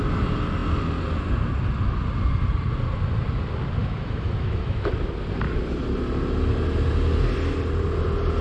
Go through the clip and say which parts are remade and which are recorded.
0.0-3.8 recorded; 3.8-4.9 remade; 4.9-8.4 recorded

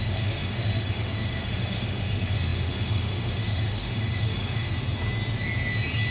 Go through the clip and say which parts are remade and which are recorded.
0.0-4.7 remade; 4.7-6.1 recorded

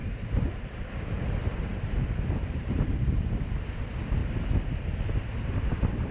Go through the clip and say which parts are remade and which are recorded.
0.0-4.2 remade; 4.2-5.5 recorded; 5.5-6.1 remade

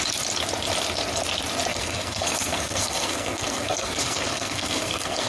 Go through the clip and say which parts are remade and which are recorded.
0.0-1.7 recorded; 1.7-5.3 remade

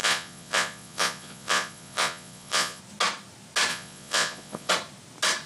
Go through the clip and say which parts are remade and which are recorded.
0.0-2.8 remade; 2.8-3.7 recorded; 3.7-4.7 remade; 4.7-5.5 recorded